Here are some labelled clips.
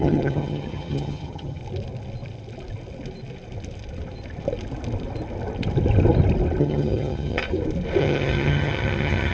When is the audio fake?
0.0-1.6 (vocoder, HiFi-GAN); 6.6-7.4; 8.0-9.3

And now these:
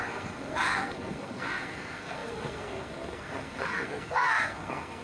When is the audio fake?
0.0-5.0 (codec, SNAC)

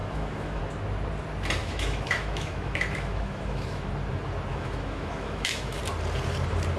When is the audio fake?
0.0-0.6 (autoencoder, DAC-VAE); 1.6-3.9; 4.5-5.8

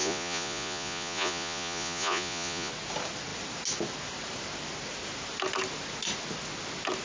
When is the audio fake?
0.0-2.7 (vocoder, Vocos)

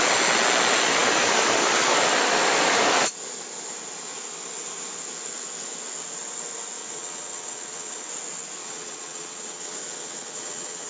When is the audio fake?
6.8-8.1 (vocoder, WaveNeXt); 8.6-10.9

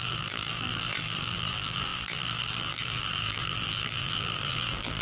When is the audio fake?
0.0-5.0 (vocoder, BigVGAN v2)

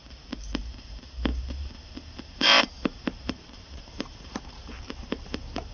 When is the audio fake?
0.6-5.7 (vocoder, BigVGAN v2)

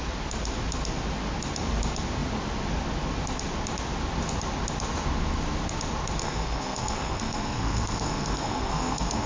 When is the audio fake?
6.2-9.3 (codec, SNAC)